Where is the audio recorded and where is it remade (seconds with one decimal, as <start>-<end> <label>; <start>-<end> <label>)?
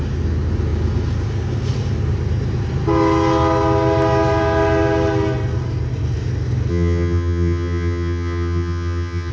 0.0-6.7 recorded; 6.7-9.3 remade